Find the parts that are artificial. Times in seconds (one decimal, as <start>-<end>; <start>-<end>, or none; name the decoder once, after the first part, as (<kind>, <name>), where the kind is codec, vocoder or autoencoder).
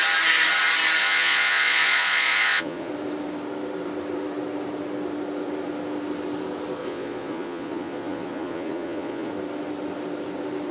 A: 1.0-2.9 (vocoder, Vocos); 6.8-9.3